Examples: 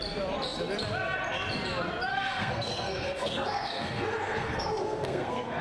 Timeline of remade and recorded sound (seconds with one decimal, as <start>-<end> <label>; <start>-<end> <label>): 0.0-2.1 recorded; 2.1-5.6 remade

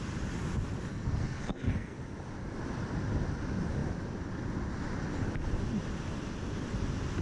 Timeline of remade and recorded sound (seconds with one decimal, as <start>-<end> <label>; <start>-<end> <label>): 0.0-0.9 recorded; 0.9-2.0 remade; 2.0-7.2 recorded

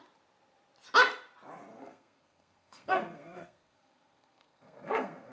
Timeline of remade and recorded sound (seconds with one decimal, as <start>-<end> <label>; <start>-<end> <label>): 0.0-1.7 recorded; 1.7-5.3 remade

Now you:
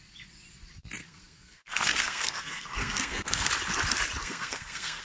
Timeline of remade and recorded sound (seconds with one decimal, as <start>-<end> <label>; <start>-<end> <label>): 0.0-1.0 recorded; 1.0-3.5 remade; 3.5-4.2 recorded; 4.2-5.0 remade

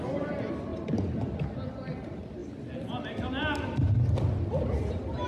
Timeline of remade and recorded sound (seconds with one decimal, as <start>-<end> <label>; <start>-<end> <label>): 0.0-5.3 recorded